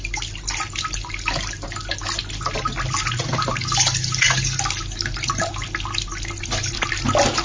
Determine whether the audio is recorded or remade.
recorded